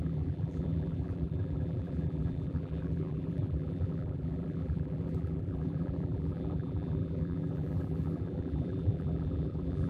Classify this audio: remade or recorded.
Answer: remade